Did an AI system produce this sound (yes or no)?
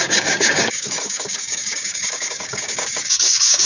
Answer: yes